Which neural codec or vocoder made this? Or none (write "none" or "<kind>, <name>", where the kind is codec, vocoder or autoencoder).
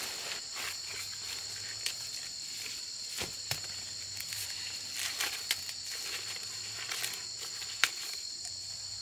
none